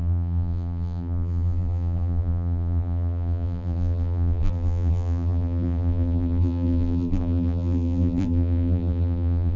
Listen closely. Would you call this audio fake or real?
fake